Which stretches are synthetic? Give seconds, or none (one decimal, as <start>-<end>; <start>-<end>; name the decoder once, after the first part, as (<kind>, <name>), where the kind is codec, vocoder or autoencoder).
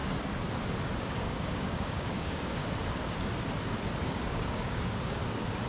1.0-2.6 (codec, DAC); 4.0-5.2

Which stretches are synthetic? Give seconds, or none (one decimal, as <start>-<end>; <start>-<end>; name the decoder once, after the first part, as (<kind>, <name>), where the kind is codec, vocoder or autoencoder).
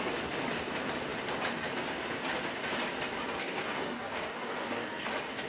3.4-5.1 (codec, DAC)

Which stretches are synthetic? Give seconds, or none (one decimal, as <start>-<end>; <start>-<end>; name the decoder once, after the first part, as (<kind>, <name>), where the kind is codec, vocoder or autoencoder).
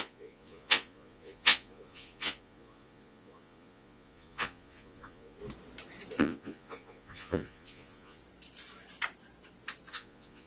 0.0-5.4 (vocoder, Vocos); 6.2-8.2; 9.9-10.5